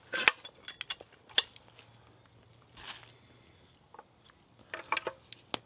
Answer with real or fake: real